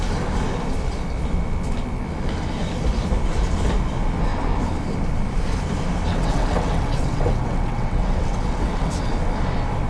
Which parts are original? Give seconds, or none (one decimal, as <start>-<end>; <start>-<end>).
0.0-6.1; 9.1-9.9